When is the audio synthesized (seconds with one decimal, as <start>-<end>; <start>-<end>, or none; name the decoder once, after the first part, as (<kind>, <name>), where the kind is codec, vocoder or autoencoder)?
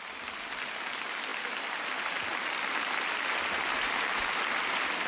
none